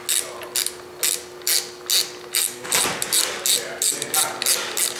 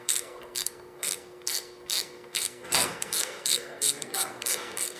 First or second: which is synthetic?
second